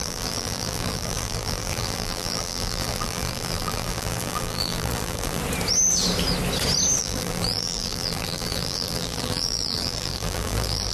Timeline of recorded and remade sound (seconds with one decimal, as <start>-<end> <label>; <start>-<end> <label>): 0.0-5.4 remade; 5.4-7.0 recorded; 7.0-10.9 remade

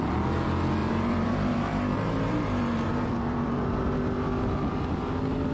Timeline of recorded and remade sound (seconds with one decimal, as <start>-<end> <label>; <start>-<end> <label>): 0.0-0.8 recorded; 0.8-3.9 remade; 3.9-5.5 recorded

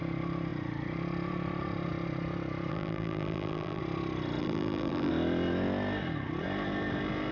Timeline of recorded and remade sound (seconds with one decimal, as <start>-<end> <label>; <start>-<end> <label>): 0.0-2.7 recorded; 2.7-3.8 remade; 3.8-4.4 recorded; 4.4-5.1 remade; 5.1-7.3 recorded

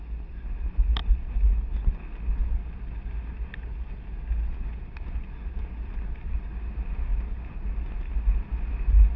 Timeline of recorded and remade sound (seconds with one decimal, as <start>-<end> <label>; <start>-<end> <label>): 0.0-9.2 recorded

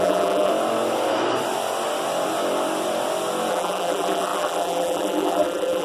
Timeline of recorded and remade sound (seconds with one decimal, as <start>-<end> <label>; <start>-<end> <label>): 0.0-0.5 remade; 0.5-3.5 recorded; 3.5-5.8 remade

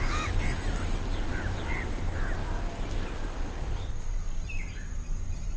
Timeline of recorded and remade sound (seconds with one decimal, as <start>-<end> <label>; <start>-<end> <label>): 0.0-1.1 recorded; 1.1-2.0 remade; 2.0-5.6 recorded